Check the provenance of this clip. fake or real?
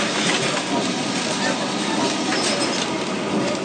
real